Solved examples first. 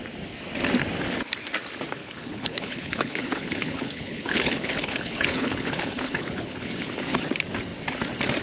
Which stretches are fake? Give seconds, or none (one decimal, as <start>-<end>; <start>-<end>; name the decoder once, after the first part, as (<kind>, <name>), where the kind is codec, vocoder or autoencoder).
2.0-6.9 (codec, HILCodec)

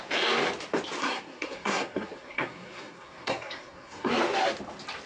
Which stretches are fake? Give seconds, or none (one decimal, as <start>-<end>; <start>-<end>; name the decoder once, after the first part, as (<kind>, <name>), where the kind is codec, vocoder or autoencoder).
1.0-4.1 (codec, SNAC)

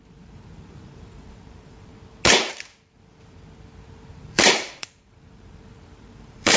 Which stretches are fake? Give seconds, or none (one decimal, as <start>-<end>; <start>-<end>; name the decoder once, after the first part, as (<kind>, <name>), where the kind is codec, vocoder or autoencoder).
0.0-1.9 (vocoder, BigVGAN v2); 4.1-6.6